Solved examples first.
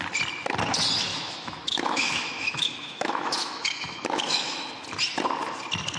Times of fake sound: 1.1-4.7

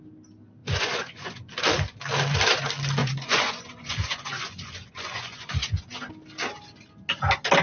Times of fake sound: 0.6-1.5; 3.0-5.9

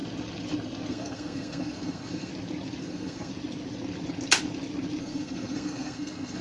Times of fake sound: 0.9-2.3; 2.8-3.3; 5.0-6.4

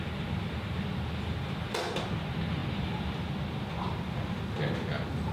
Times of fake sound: none

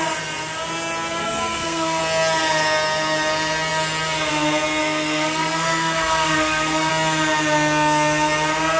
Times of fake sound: 1.2-2.0; 4.8-6.9

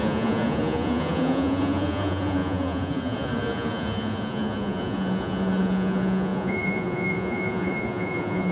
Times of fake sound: 0.0-8.5

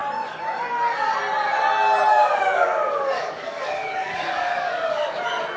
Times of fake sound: 2.1-5.1

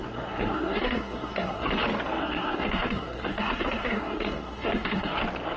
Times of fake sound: 0.0-1.7; 2.2-5.1